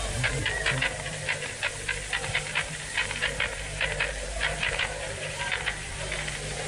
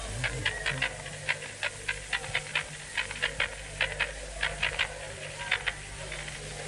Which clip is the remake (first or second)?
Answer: first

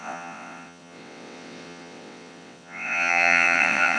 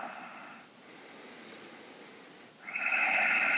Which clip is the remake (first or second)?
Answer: first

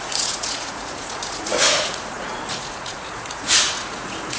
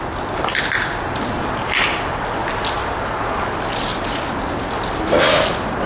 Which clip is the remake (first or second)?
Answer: first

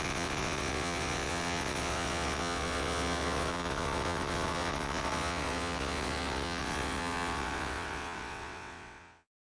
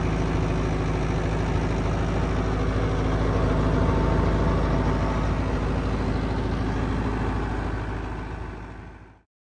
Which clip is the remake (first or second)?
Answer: first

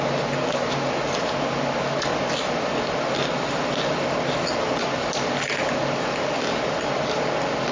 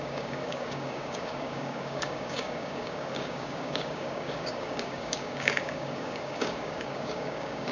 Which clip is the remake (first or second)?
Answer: second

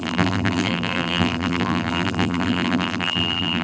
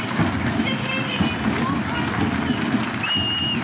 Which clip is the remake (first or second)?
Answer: first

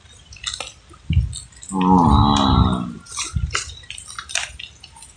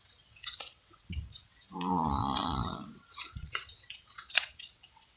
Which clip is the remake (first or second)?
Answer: second